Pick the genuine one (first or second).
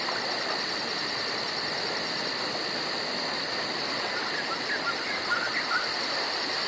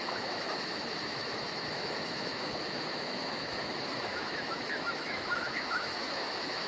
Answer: first